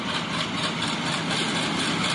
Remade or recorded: recorded